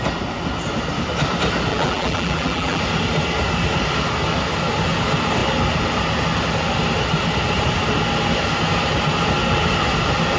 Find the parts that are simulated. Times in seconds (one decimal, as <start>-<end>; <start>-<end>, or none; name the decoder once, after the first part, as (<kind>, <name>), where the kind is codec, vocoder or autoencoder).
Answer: 1.7-2.8 (vocoder, BigVGAN v2)